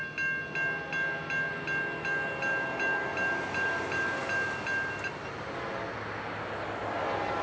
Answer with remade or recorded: recorded